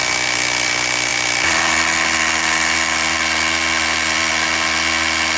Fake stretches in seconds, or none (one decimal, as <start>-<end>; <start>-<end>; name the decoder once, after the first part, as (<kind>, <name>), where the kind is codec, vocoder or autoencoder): 1.1-4.3 (vocoder, BigVGAN v2)